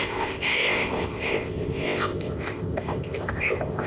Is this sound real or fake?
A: fake